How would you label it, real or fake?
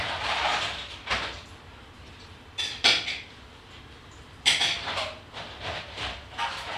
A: fake